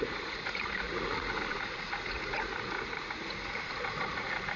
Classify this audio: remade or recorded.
remade